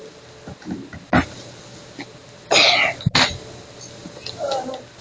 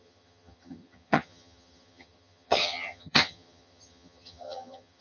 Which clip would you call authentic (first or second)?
first